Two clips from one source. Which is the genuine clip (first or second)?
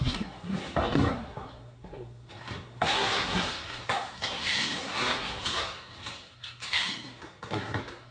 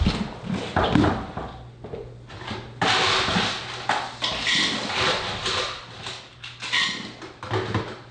second